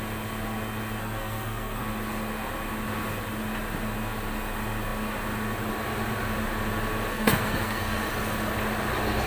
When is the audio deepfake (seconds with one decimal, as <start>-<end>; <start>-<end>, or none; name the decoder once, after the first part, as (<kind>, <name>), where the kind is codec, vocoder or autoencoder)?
1.0-1.8 (codec, SNAC); 7.1-8.1